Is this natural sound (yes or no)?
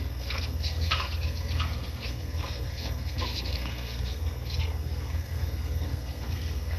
no